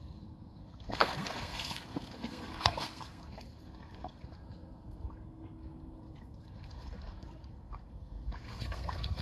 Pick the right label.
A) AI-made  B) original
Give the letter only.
A